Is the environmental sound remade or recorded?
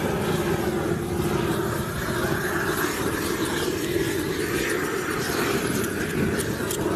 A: recorded